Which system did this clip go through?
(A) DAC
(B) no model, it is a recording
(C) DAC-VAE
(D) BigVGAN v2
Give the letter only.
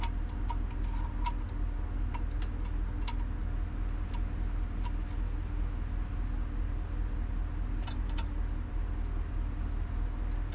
B